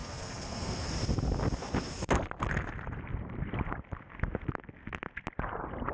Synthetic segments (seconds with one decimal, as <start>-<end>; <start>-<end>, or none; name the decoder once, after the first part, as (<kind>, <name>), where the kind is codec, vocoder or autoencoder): 0.0-0.9 (codec, SNAC)